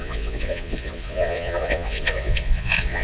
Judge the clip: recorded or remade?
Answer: remade